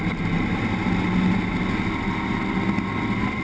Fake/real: real